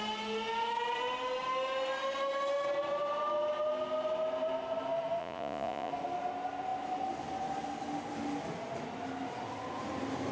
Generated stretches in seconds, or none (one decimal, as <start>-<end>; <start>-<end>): 5.2-5.9